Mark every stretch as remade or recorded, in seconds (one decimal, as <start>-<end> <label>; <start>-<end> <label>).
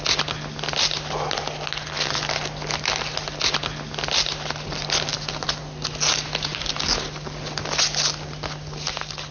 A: 0.0-9.3 recorded